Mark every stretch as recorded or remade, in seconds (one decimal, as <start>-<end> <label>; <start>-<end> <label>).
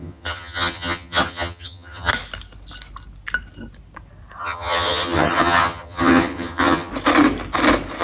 0.0-2.1 remade; 2.1-4.4 recorded; 4.4-6.9 remade; 6.9-8.0 recorded